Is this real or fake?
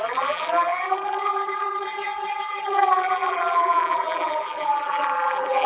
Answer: fake